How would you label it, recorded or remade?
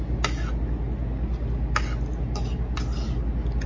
recorded